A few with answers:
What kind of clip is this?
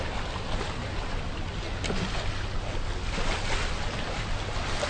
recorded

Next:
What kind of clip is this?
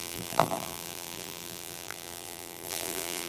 remade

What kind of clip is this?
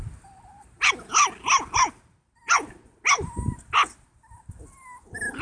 recorded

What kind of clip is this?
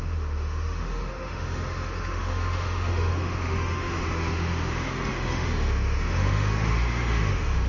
remade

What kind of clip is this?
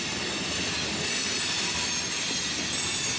recorded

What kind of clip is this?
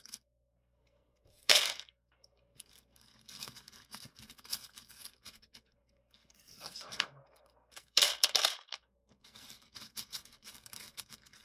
remade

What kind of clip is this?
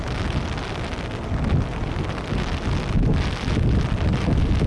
recorded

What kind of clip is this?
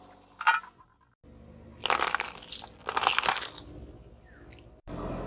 recorded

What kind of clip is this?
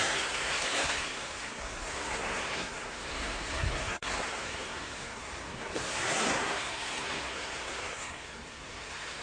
remade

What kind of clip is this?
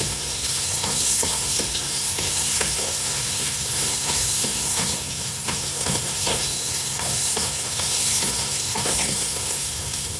remade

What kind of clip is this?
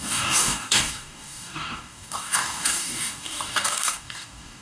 remade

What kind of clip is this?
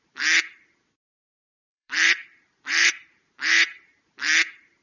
remade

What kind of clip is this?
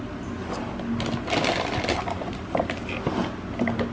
recorded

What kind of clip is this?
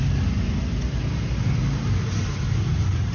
recorded